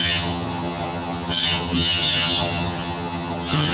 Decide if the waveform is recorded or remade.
remade